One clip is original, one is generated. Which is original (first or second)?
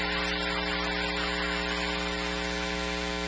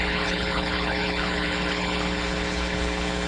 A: first